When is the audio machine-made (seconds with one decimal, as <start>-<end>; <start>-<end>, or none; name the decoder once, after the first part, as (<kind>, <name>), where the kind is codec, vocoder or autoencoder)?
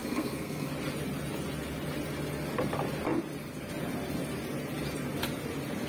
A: 0.0-0.7 (codec, SNAC)